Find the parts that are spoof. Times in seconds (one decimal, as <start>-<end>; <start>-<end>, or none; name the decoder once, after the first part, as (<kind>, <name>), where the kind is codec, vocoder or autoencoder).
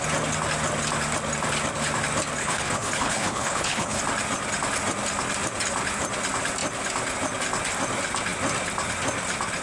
2.4-4.0 (codec, HILCodec)